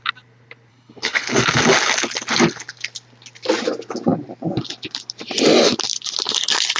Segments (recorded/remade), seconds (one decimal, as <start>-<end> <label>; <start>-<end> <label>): 0.0-0.7 recorded; 0.7-1.3 remade; 1.3-6.8 recorded